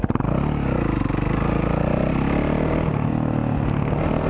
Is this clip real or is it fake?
real